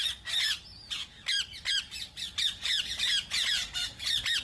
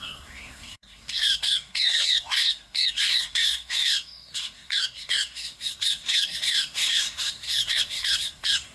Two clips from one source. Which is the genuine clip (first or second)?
first